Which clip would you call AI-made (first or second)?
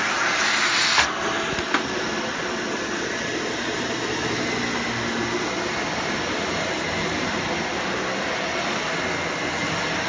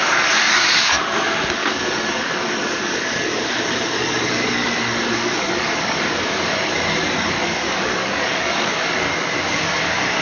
second